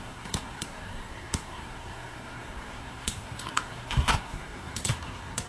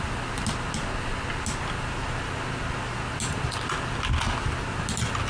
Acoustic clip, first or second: second